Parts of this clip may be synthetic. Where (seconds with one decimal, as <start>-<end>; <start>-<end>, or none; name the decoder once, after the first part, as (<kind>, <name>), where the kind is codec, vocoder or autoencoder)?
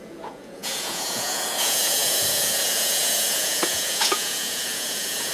0.0-5.3 (vocoder, Vocos)